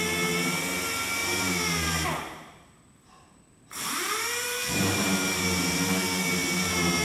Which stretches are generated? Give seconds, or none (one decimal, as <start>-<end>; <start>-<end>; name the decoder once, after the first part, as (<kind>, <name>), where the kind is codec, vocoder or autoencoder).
1.2-5.4 (vocoder, BigVGAN v2)